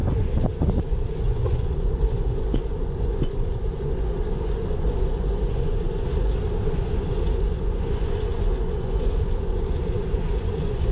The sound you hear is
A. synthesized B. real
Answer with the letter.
A